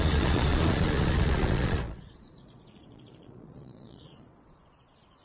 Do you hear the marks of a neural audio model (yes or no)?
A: yes